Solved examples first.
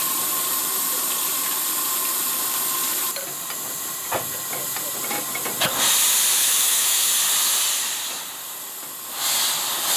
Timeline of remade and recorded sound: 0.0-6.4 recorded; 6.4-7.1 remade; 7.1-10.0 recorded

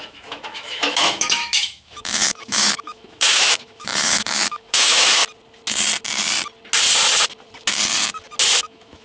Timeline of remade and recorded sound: 0.0-5.2 remade; 5.2-8.6 recorded; 8.6-9.0 remade